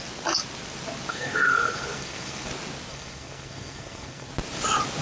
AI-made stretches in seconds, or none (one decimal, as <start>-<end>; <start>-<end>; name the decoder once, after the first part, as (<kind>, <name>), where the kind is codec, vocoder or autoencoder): 1.1-2.5 (codec, SNAC); 2.9-4.3